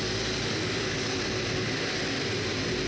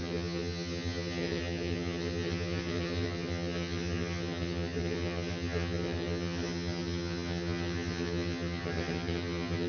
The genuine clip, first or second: first